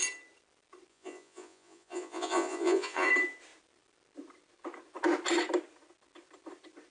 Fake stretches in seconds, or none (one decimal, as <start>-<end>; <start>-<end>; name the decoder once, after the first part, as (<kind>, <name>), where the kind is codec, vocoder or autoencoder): 0.9-3.1 (vocoder, Vocos)